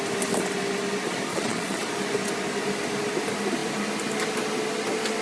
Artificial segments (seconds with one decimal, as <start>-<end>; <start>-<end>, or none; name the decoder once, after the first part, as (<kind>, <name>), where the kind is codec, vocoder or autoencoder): 1.3-1.9 (vocoder, Vocos)